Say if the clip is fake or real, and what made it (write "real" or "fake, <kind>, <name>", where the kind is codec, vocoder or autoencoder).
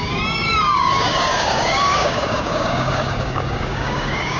fake, codec, DAC